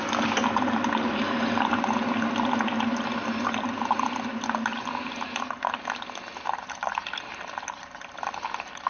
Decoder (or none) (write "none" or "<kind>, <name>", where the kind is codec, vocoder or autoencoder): none